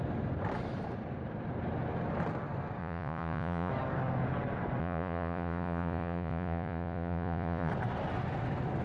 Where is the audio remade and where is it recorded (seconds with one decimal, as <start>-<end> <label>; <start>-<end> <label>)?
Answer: 0.0-2.8 recorded; 2.8-3.7 remade; 3.7-4.8 recorded; 4.8-7.7 remade; 7.7-8.8 recorded

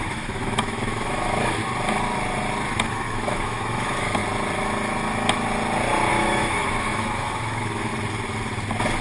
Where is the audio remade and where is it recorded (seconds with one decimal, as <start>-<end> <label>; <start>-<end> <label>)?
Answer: 0.0-1.6 remade; 1.6-2.9 recorded; 2.9-4.2 remade; 4.2-6.1 recorded; 6.1-7.9 remade; 7.9-9.0 recorded